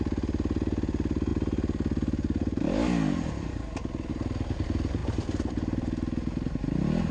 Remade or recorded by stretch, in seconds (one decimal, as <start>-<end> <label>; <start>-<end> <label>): 0.0-7.1 recorded